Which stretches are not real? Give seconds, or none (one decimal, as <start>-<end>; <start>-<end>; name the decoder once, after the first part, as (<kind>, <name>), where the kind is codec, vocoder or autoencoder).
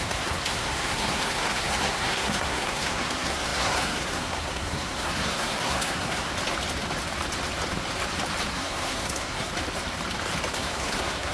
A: 0.0-6.3 (codec, SNAC); 8.5-9.5; 10.5-11.3